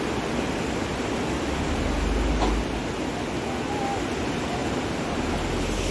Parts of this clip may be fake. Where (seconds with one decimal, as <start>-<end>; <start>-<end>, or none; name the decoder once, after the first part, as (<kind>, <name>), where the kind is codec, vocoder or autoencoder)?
none